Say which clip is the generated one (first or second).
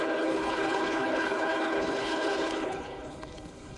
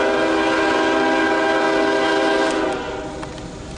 first